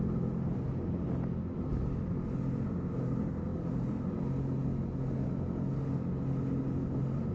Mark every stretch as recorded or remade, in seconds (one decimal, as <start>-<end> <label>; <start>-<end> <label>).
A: 0.0-7.3 recorded